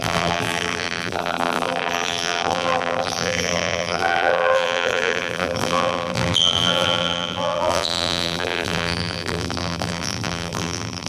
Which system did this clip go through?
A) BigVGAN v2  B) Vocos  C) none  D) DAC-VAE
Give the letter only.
A